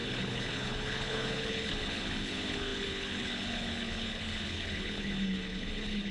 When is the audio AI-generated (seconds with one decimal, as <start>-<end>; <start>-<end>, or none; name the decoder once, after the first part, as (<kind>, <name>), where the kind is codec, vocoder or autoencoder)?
0.0-6.1 (codec, HILCodec)